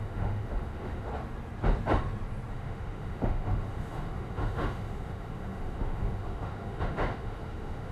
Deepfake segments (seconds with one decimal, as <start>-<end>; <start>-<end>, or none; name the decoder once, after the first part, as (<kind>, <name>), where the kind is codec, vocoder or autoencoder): 0.0-1.1 (autoencoder, DAC-VAE); 2.5-7.9